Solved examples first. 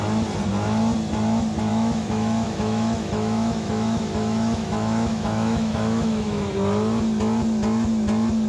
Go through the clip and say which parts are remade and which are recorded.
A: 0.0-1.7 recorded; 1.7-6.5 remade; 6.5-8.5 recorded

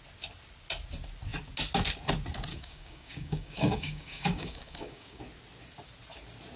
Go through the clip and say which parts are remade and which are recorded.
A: 0.0-2.5 recorded; 2.5-5.2 remade; 5.2-6.6 recorded

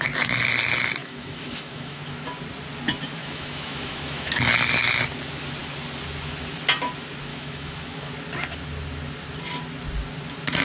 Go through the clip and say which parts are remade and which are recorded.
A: 0.0-1.0 recorded; 1.0-2.0 remade; 2.0-3.2 recorded; 3.2-4.4 remade; 4.4-7.3 recorded; 7.3-8.1 remade; 8.1-10.6 recorded

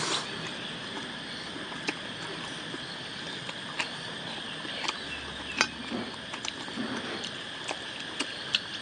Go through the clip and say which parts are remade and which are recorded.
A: 0.0-8.8 remade